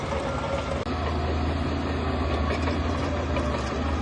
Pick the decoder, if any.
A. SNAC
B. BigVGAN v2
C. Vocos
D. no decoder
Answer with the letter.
D